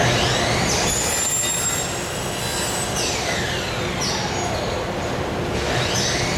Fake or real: real